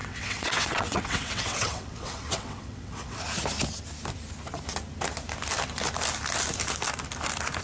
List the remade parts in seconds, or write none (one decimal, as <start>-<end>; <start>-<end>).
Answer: 0.0-3.2

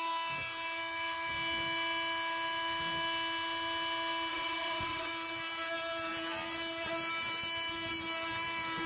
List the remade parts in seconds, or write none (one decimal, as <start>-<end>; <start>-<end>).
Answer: 4.3-5.1

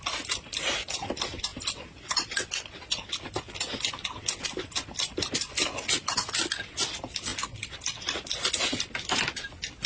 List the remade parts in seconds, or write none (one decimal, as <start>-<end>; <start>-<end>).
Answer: none

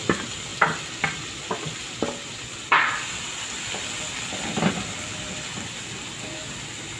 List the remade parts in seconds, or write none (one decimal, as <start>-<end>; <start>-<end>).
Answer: none

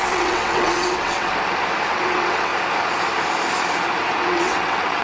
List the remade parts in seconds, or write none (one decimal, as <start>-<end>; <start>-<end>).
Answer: 0.0-1.3; 1.9-2.5; 4.2-5.0

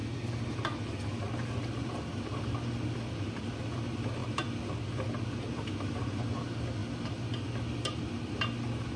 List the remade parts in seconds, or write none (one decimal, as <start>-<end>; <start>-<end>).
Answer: none

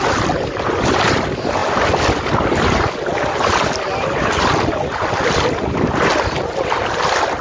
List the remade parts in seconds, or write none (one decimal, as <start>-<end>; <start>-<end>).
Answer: none